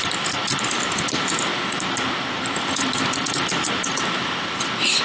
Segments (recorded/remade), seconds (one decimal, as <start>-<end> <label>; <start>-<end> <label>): 0.0-5.0 recorded